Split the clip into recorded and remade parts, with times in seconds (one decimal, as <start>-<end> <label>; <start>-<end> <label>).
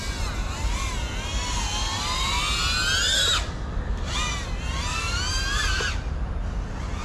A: 0.0-7.0 recorded